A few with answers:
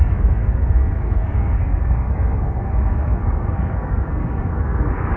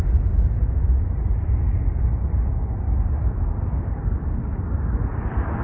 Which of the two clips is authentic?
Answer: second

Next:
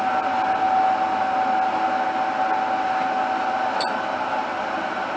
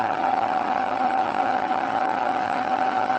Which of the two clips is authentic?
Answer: first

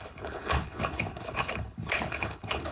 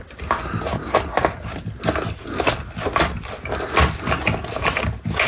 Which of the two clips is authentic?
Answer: second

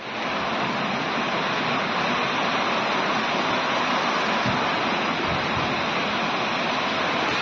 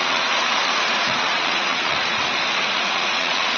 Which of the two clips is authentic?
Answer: first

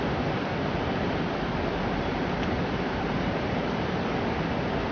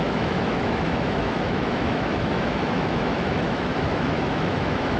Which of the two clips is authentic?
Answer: first